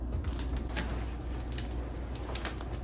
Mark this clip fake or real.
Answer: real